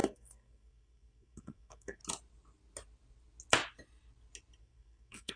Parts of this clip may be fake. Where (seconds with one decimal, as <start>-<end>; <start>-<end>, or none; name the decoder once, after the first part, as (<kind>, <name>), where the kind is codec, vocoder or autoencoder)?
0.0-2.0 (codec, SNAC); 4.6-5.4